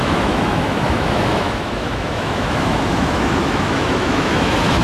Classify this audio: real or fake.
fake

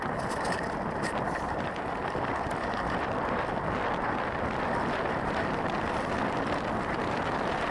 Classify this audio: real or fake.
real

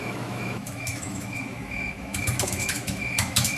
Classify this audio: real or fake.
fake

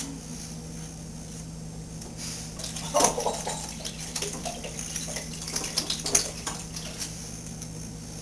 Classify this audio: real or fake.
real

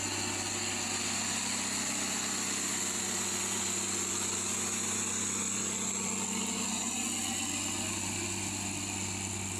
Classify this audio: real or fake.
real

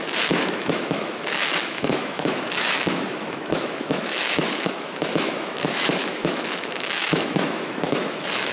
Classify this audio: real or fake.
fake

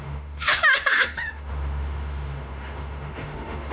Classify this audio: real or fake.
fake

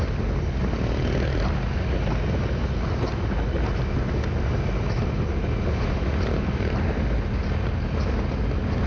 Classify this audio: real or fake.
real